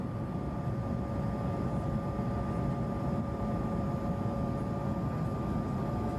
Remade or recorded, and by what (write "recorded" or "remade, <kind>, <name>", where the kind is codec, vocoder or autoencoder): recorded